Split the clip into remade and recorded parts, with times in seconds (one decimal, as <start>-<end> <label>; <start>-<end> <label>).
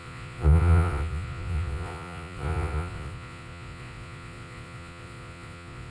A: 0.0-5.9 remade